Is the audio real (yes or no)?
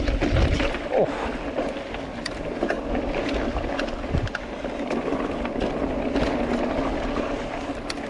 yes